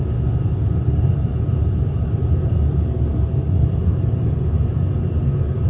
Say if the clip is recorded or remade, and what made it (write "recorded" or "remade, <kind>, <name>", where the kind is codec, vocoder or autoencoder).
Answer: recorded